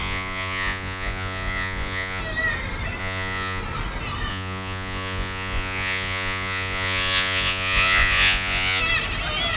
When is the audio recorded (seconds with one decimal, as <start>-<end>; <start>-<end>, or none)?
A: 2.2-3.0; 3.6-4.3; 8.8-9.6